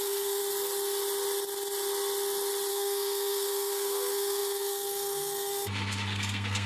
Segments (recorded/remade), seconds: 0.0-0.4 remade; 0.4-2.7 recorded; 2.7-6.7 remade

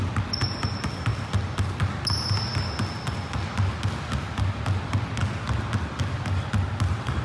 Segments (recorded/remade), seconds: 0.0-7.2 recorded

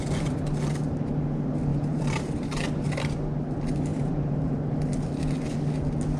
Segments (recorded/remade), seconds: 0.0-1.7 recorded; 1.7-3.0 remade; 3.0-3.9 recorded; 3.9-4.5 remade; 4.5-6.2 recorded

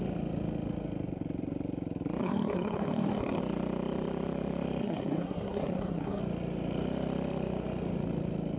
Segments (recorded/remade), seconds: 0.0-2.2 recorded; 2.2-3.4 remade; 3.4-4.8 recorded; 4.8-6.2 remade; 6.2-8.6 recorded

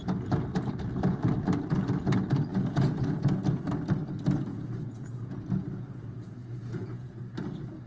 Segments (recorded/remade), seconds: 0.0-2.5 recorded; 2.5-3.5 remade; 3.5-4.5 recorded; 4.5-7.3 remade; 7.3-7.9 recorded

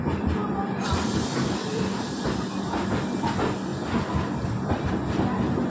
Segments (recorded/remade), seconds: 0.0-5.7 recorded

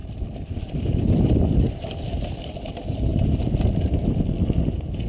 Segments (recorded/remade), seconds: 0.0-3.1 remade; 3.1-5.1 recorded

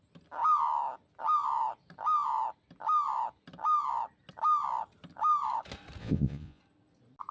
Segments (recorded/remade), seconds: 0.0-6.0 recorded; 6.0-6.6 remade; 6.6-7.3 recorded